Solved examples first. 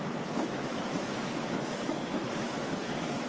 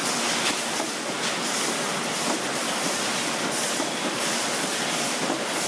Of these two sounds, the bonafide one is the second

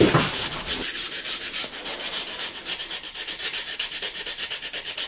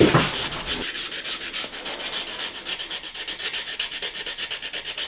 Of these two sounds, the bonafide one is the second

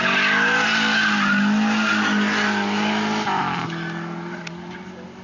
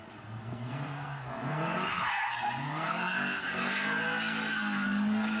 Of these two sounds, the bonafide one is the first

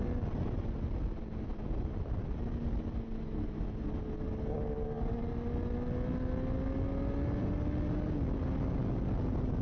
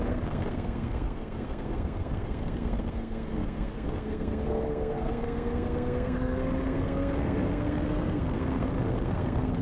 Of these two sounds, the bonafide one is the first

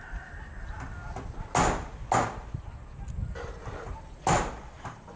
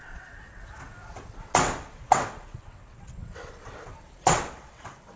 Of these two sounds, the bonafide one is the first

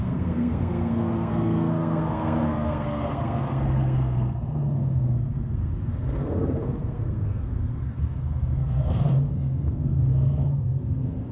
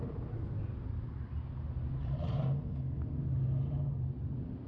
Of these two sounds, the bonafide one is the second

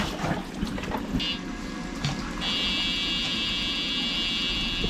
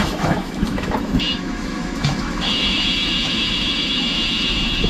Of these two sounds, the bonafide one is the first